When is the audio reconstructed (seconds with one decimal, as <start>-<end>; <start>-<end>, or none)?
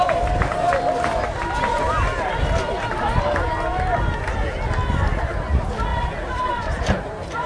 5.9-6.5